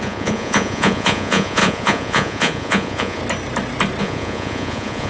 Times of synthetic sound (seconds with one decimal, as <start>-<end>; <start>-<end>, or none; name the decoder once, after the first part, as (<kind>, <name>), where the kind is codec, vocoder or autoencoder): 0.0-3.2 (vocoder, Vocos); 4.0-5.1

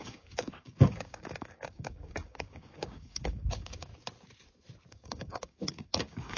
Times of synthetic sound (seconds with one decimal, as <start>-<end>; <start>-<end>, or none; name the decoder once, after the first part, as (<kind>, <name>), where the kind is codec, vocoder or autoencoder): 0.0-3.9 (codec, DAC); 4.9-6.4